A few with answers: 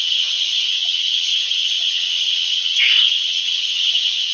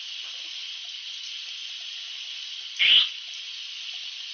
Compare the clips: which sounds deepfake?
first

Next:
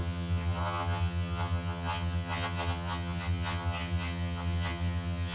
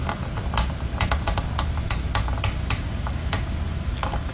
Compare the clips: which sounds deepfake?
first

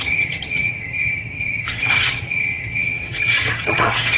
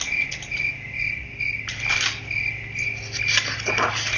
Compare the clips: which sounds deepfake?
first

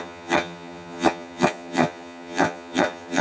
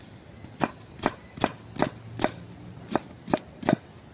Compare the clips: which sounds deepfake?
first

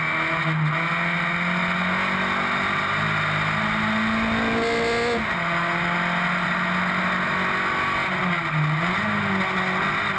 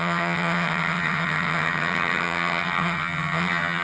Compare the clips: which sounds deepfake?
second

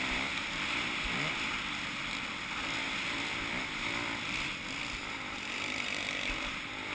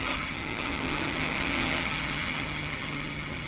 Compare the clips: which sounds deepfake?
second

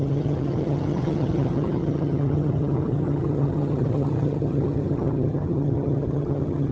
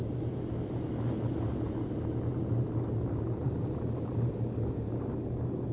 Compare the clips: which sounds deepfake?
first